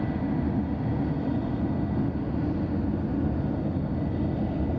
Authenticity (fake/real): real